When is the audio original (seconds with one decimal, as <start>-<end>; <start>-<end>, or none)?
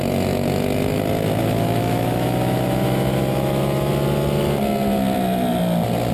0.0-1.4; 3.9-6.1